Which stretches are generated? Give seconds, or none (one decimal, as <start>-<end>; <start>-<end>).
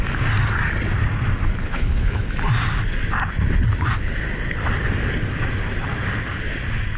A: 1.6-2.3